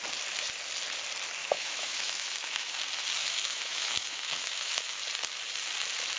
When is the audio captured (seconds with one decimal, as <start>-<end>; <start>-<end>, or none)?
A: 0.0-1.4; 2.8-3.2; 5.0-6.2